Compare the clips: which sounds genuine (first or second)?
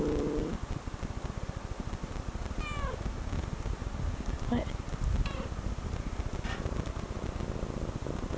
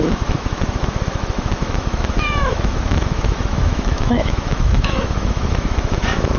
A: first